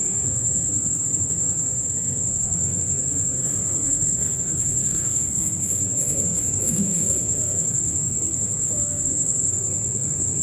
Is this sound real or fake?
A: fake